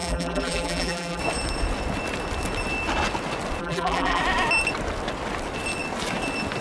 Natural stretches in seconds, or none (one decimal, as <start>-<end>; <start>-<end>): 1.2-3.6; 4.2-6.6